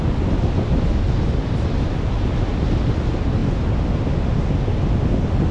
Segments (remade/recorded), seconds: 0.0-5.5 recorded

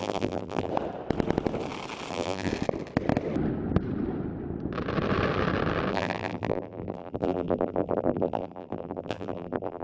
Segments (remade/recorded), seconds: 0.0-0.7 remade; 0.7-2.1 recorded; 2.1-2.5 remade; 2.5-5.9 recorded; 5.9-9.8 remade

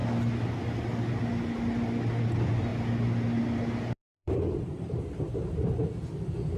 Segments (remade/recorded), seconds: 0.0-4.0 recorded; 4.0-5.0 remade; 5.0-6.6 recorded